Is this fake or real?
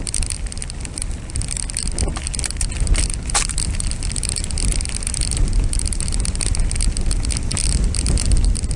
real